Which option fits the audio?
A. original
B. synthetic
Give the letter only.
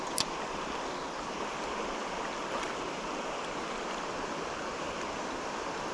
A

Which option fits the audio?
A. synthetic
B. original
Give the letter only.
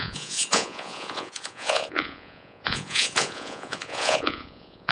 A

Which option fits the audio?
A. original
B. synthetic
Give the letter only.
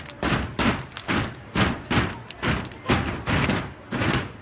A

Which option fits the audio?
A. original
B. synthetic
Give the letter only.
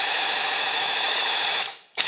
B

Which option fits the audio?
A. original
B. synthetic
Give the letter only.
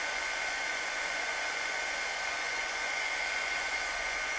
B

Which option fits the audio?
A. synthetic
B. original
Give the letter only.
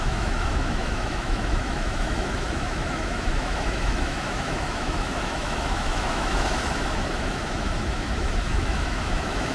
A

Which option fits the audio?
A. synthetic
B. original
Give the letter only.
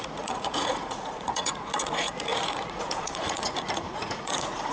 A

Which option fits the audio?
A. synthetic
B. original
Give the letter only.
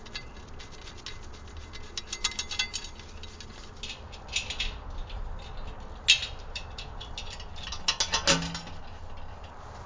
B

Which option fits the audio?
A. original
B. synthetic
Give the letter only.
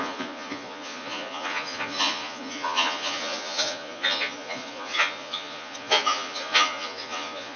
B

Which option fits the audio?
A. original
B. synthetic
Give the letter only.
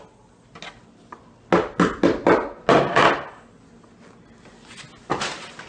A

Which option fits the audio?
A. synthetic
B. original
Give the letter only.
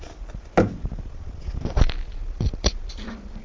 B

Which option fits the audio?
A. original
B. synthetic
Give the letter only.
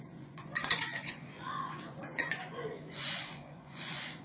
B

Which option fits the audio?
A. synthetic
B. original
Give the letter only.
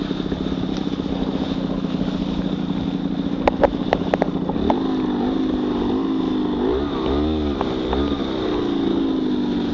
B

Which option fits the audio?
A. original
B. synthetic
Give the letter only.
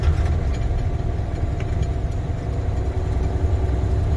A